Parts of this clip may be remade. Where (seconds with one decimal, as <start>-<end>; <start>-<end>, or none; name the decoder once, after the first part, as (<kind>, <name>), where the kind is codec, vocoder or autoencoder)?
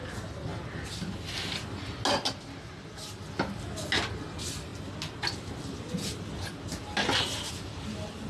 none